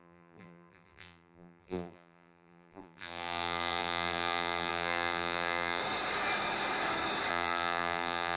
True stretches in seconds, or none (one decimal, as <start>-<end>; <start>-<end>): 5.8-7.3